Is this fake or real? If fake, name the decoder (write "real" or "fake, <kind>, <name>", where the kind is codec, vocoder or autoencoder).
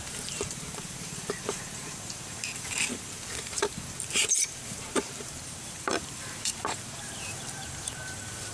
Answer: fake, vocoder, BigVGAN v2